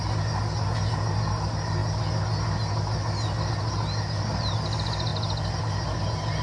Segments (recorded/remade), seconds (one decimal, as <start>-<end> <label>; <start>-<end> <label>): 0.0-6.4 recorded

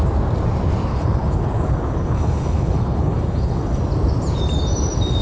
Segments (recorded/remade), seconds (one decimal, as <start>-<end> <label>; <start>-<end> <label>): 0.0-0.9 recorded; 0.9-3.8 remade; 3.8-5.2 recorded

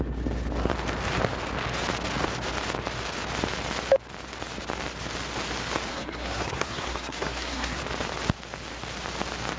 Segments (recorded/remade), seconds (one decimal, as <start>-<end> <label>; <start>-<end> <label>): 0.0-5.9 recorded; 5.9-7.8 remade; 7.8-9.6 recorded

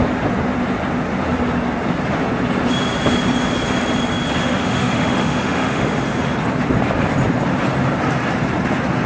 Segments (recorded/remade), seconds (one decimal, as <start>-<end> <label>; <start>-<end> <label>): 0.0-4.4 recorded; 4.4-6.0 remade; 6.0-9.1 recorded

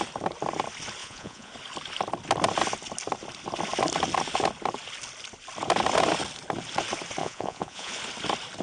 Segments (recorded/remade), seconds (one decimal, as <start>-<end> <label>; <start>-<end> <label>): 0.0-1.0 recorded; 1.0-1.5 remade; 1.5-7.2 recorded; 7.2-7.9 remade; 7.9-8.6 recorded

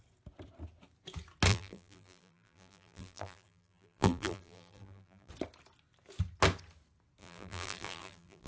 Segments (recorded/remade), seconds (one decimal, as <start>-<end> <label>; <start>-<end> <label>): 0.0-1.5 recorded; 1.5-5.3 remade; 5.3-7.2 recorded; 7.2-8.5 remade

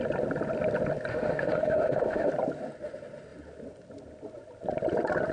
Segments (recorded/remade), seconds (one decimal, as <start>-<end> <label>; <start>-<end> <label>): 0.0-1.1 recorded; 1.1-2.3 remade; 2.3-5.3 recorded